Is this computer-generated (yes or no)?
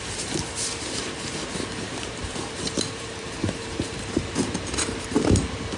yes